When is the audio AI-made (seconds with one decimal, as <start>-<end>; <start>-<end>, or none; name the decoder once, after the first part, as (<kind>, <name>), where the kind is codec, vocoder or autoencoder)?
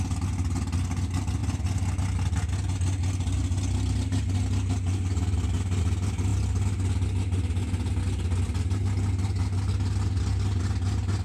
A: none